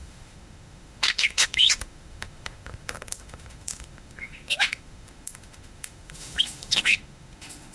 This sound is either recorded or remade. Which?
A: remade